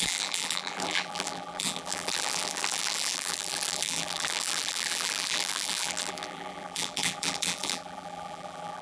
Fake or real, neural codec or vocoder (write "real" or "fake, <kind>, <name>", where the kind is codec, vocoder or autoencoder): fake, vocoder, BigVGAN v2